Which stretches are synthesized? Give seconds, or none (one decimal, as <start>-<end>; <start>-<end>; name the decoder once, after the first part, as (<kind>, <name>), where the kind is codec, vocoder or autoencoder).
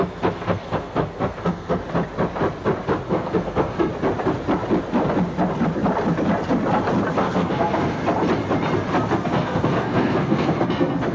0.0-1.8 (codec, SNAC); 3.1-3.9; 7.2-8.0; 9.1-11.1